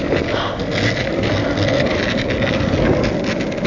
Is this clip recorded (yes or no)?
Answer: yes